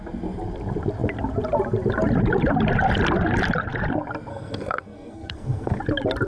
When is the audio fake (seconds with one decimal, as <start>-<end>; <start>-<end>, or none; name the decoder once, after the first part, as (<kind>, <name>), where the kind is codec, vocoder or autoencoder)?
4.3-5.8 (codec, SNAC)